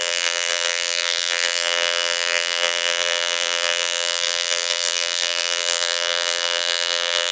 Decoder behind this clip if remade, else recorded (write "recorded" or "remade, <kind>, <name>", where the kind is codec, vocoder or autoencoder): remade, vocoder, BigVGAN v2